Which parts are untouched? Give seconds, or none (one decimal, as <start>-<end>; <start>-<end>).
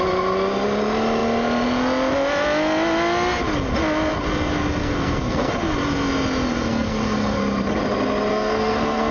0.0-4.8; 5.5-6.7; 7.4-8.3